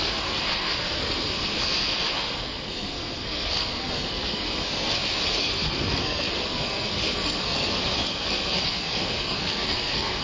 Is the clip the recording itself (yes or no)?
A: no